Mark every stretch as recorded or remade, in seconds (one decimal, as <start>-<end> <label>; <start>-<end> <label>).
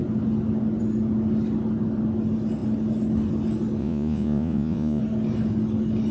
0.0-3.8 recorded; 3.8-5.0 remade; 5.0-6.1 recorded